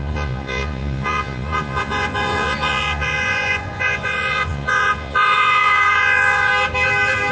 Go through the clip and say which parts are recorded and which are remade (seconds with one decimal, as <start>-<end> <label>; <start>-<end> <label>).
0.0-6.5 remade; 6.5-7.3 recorded

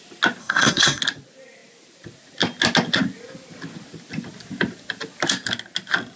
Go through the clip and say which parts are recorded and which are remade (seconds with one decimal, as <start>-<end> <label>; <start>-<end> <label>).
0.0-0.4 recorded; 0.4-1.0 remade; 1.0-6.2 recorded

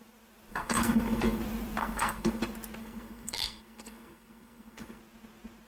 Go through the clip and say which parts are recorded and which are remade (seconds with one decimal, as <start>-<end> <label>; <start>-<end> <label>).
0.0-0.5 recorded; 0.5-1.4 remade; 1.4-1.8 recorded; 1.8-2.4 remade; 2.4-2.8 recorded; 2.8-5.0 remade; 5.0-5.7 recorded